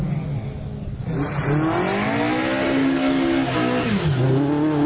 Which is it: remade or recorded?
recorded